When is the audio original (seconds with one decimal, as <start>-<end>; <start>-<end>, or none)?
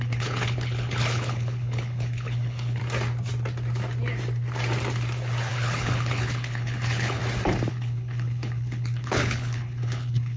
2.8-5.5; 7.2-7.7